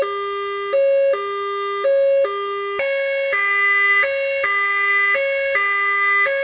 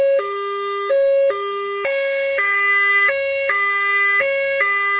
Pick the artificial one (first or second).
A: second